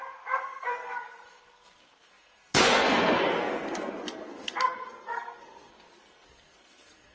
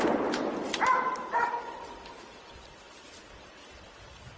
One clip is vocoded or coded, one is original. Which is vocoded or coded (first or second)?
first